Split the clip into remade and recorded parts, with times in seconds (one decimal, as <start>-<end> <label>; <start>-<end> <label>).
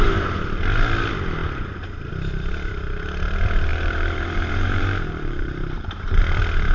0.0-3.7 recorded; 3.7-6.2 remade; 6.2-6.7 recorded